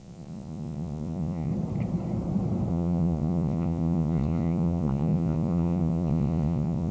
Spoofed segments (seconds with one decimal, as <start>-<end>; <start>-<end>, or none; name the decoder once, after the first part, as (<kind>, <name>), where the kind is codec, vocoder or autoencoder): 0.0-1.5 (vocoder, Vocos); 2.7-6.9